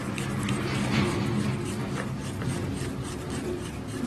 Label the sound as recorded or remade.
recorded